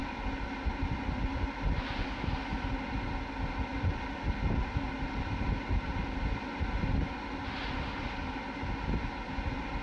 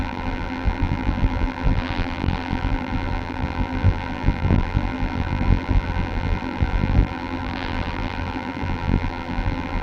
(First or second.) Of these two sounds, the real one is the first